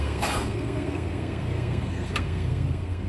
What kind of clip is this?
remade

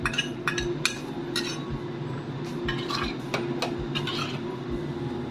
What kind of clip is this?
recorded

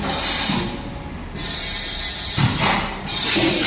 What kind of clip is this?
recorded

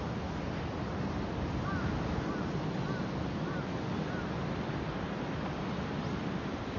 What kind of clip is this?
recorded